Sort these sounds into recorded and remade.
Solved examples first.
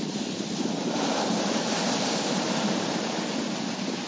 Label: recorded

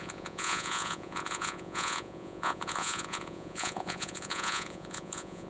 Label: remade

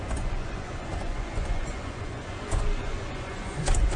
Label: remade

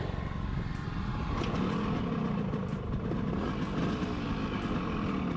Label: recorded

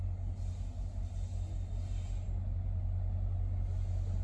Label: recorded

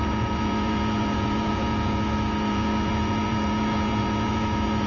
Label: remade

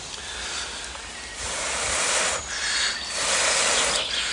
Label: recorded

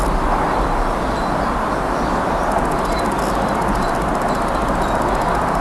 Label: recorded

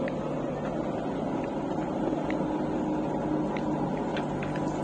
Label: recorded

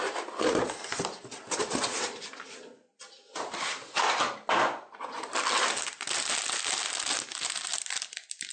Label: recorded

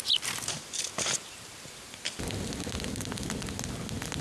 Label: recorded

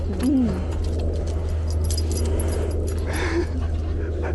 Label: recorded